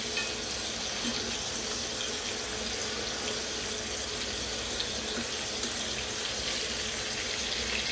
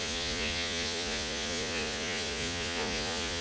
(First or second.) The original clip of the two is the first